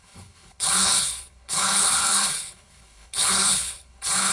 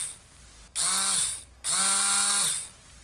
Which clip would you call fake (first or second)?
first